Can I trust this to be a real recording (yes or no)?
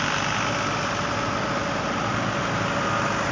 yes